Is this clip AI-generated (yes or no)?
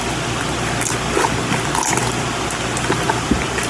no